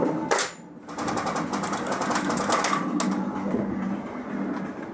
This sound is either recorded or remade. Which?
recorded